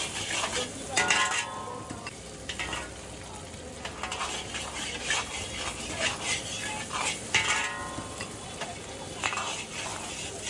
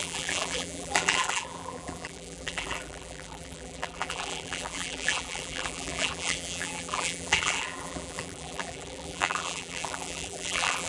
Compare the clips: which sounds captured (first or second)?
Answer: first